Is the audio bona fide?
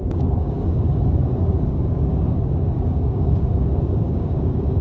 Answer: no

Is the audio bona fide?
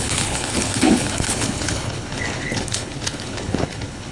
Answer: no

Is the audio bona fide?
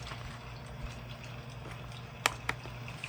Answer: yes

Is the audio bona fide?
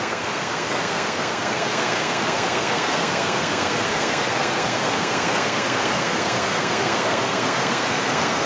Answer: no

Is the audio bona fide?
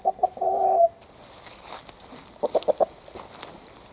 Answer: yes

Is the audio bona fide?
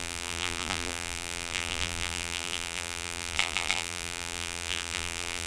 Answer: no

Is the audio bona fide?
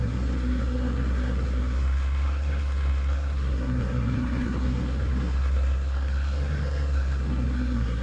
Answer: no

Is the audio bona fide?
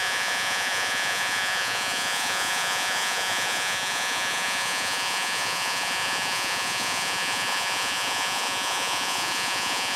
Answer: no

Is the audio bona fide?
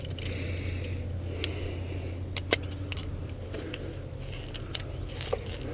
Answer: yes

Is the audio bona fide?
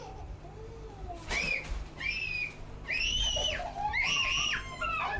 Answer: yes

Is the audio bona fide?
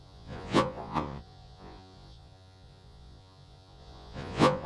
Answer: no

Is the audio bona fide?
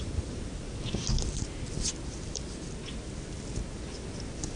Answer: yes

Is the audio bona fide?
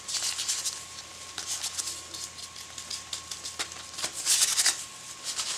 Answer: yes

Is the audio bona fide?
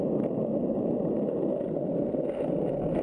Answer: yes